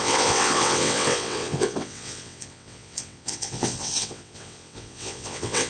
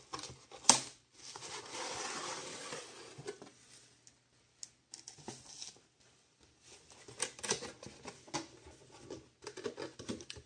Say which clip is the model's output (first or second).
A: first